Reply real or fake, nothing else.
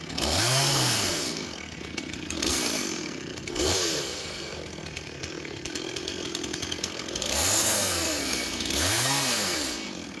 fake